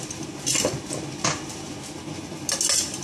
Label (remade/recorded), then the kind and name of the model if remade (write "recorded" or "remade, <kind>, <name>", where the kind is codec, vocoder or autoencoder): recorded